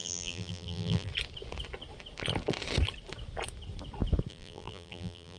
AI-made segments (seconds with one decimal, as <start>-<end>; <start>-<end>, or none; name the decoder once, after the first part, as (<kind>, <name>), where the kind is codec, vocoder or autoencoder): 0.0-1.1 (vocoder, BigVGAN v2); 4.3-5.4